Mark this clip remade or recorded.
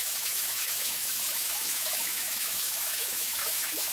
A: remade